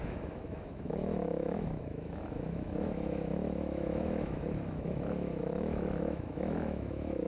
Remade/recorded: remade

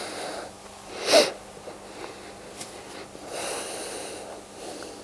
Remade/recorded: recorded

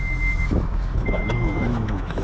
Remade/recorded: remade